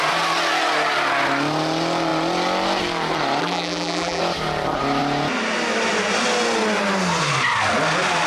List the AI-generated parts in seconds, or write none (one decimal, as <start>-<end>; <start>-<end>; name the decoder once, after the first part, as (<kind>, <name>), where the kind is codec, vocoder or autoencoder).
3.4-4.2 (vocoder, BigVGAN v2)